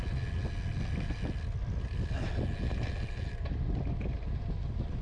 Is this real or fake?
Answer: real